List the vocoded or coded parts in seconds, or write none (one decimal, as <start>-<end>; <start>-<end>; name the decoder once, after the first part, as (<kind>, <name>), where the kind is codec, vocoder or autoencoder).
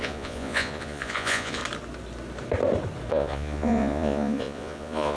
0.0-1.6 (vocoder, Vocos); 3.1-5.2